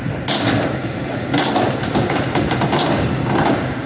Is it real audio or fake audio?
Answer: real